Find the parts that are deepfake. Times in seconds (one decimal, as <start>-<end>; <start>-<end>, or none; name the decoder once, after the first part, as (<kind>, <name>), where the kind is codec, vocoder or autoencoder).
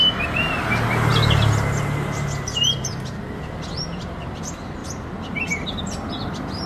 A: none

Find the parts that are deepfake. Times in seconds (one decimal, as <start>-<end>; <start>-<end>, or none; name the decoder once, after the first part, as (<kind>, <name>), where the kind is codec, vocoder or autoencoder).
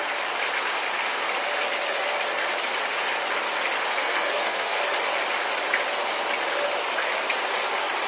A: 3.9-4.8 (codec, SNAC)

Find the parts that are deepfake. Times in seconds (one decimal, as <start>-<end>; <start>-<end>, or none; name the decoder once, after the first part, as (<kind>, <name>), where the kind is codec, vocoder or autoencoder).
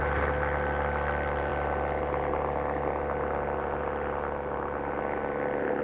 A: none